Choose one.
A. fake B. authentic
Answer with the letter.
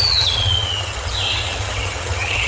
A